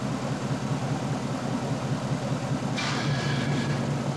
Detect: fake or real real